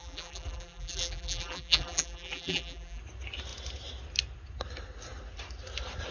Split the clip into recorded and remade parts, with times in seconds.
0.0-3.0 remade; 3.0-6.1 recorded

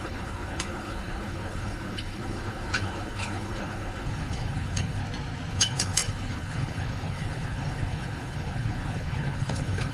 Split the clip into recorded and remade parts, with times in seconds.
0.0-5.0 remade; 5.0-5.5 recorded; 5.5-9.9 remade

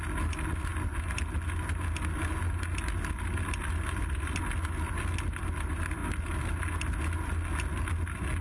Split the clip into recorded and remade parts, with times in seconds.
0.0-8.4 recorded